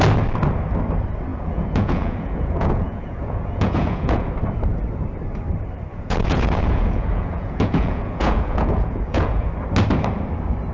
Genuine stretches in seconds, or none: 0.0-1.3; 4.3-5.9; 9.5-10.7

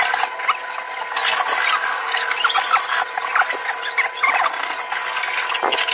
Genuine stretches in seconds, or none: 0.0-5.9